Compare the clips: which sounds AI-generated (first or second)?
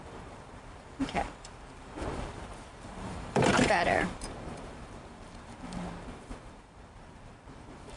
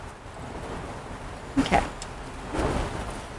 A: first